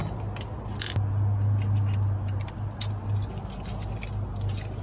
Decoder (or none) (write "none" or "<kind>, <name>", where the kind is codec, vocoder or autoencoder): none